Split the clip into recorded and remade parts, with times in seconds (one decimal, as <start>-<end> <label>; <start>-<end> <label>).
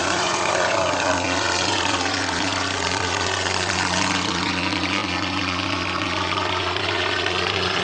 0.0-7.8 remade